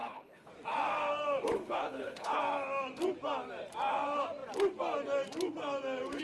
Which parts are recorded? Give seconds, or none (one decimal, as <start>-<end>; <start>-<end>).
0.5-1.5; 2.4-6.2